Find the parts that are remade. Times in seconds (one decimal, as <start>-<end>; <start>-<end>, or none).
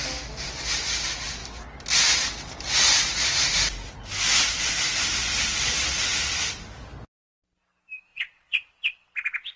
8.1-8.7